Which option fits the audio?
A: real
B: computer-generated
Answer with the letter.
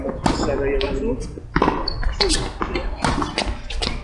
A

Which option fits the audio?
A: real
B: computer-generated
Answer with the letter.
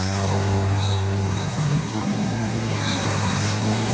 B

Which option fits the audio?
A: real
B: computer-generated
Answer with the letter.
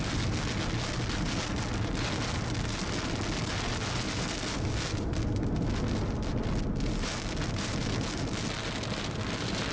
A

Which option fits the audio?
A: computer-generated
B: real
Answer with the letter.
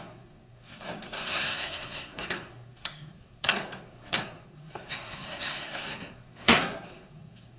A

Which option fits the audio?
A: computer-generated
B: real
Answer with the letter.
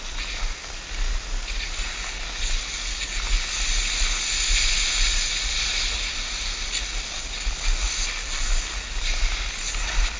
B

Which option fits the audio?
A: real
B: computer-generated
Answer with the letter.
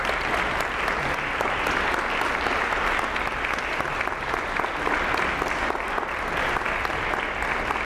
A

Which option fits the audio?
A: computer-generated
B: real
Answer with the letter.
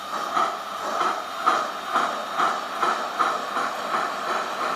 B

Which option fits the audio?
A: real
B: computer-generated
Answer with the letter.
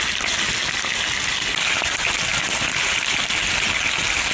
A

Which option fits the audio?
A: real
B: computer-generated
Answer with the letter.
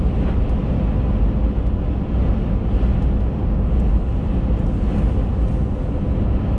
A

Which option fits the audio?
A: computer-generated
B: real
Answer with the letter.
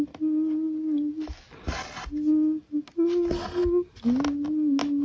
B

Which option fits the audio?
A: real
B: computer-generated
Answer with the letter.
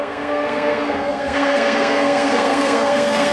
B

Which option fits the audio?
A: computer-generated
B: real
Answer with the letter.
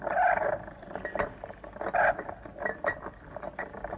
B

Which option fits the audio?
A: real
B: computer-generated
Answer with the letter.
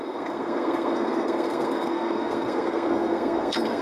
B